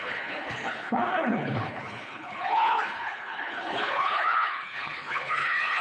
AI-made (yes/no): yes